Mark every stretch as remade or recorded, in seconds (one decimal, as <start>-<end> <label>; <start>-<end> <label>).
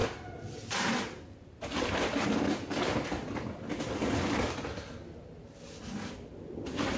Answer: 0.0-7.0 recorded